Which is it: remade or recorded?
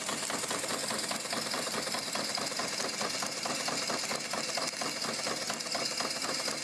recorded